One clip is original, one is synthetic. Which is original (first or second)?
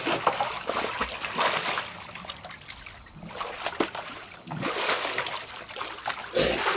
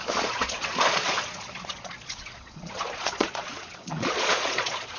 first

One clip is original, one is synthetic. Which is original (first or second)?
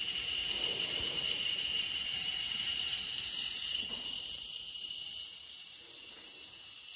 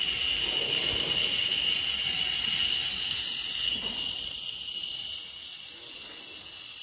second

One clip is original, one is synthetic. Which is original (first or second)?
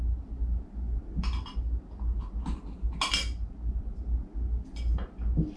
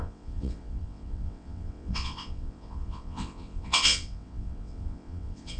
first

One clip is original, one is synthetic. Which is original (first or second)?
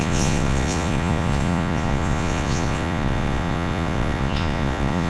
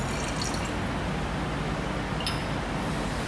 second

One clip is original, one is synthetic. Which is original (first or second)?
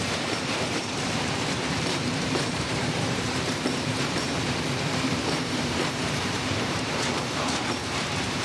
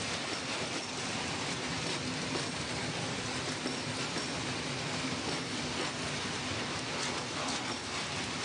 second